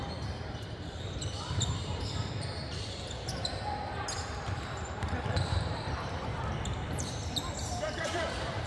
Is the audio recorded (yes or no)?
no